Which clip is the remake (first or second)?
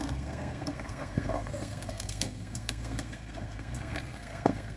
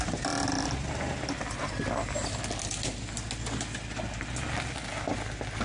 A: first